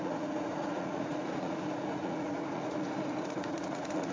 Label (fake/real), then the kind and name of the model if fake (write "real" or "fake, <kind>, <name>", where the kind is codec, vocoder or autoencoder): fake, vocoder, Vocos